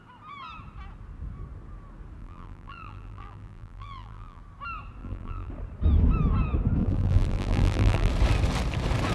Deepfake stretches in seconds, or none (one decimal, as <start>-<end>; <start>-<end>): 2.2-4.4; 5.0-5.5; 6.8-8.1